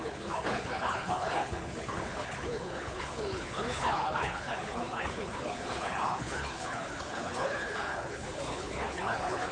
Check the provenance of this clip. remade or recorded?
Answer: remade